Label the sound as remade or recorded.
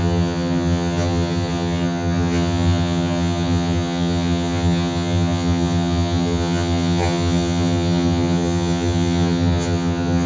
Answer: remade